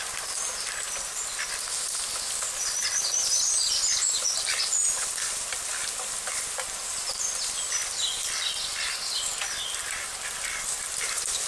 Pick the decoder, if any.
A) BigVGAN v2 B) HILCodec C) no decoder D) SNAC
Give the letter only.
C